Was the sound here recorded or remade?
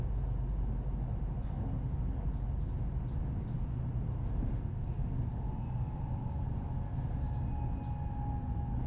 recorded